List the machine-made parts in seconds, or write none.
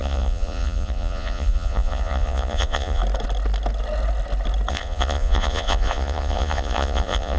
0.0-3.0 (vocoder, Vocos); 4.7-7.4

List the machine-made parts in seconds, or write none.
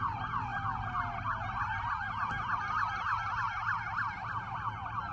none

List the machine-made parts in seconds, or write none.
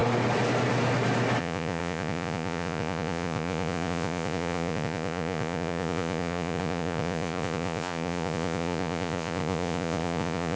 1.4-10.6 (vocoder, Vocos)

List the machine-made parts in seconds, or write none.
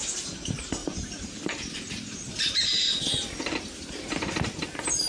0.8-3.9 (vocoder, BigVGAN v2)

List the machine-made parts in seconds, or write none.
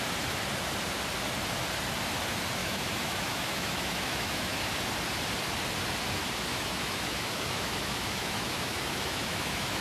2.6-4.7 (autoencoder, DAC-VAE); 6.5-9.8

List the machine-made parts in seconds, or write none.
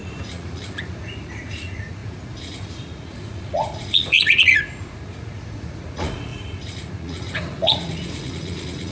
0.0-8.9 (vocoder, Vocos)